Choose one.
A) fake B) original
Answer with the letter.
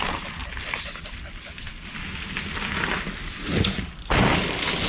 B